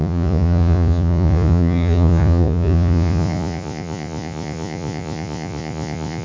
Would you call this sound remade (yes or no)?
yes